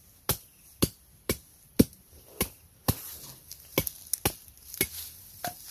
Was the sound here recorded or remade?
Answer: recorded